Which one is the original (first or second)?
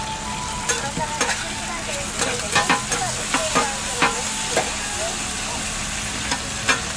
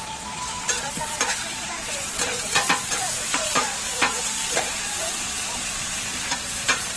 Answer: first